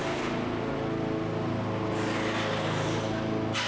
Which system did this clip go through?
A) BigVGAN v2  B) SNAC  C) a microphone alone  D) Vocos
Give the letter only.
C